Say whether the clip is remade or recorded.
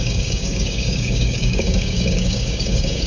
remade